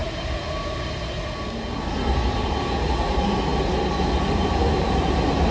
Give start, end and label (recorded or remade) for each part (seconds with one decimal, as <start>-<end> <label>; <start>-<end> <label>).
0.0-5.5 recorded